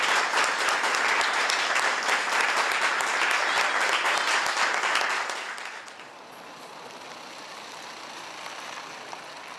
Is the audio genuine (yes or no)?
yes